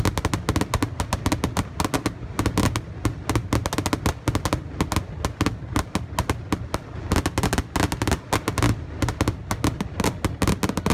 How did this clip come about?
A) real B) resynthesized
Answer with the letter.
A